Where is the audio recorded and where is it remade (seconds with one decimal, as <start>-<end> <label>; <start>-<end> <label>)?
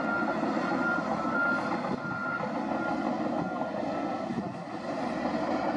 0.0-5.8 recorded